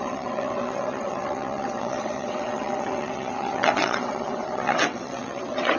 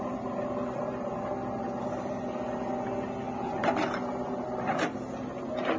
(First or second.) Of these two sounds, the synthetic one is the first